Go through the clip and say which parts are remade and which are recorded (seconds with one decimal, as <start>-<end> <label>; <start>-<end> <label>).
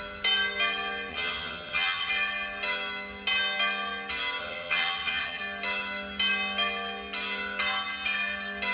0.0-1.1 recorded; 1.1-2.1 remade; 2.1-4.4 recorded; 4.4-5.4 remade; 5.4-8.7 recorded